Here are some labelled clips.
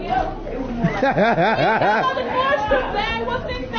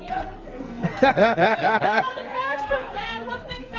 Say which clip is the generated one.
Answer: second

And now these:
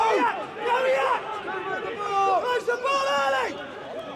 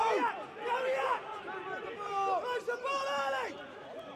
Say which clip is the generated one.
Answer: second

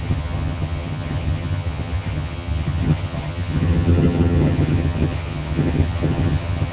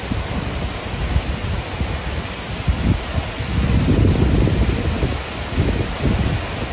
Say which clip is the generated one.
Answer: first